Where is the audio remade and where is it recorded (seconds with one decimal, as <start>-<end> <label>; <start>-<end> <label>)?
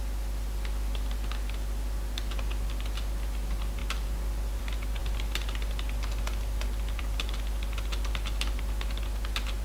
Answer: 0.0-9.6 recorded